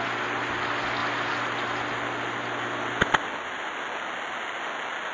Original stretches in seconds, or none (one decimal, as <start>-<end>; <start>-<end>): 0.0-5.1